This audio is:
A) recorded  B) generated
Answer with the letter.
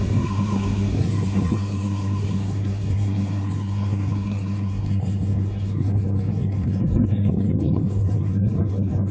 B